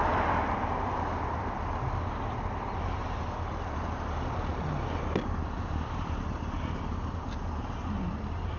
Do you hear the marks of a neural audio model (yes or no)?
no